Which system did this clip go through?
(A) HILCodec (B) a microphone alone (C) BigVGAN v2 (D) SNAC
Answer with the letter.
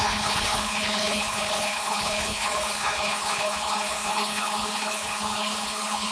A